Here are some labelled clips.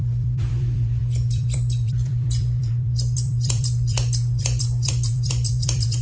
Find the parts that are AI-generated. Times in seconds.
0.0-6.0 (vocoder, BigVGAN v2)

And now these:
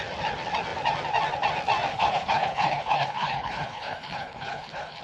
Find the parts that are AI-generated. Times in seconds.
1.9-5.0 (codec, HILCodec)

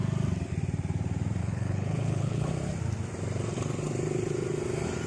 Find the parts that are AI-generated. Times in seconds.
1.4-2.5 (codec, HILCodec)

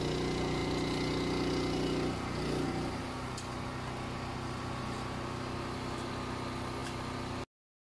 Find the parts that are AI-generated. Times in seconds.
none

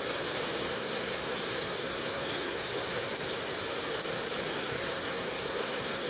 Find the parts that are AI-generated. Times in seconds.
0.6-3.1 (codec, SNAC); 4.5-6.1

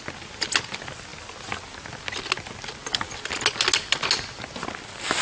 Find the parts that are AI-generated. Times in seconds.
none